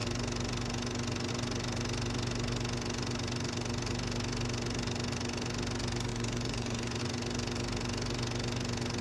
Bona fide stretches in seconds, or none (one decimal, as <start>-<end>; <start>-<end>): 0.0-6.1; 7.0-9.0